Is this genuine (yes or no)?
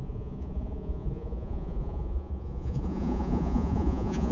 no